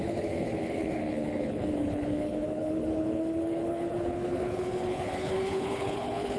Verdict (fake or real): fake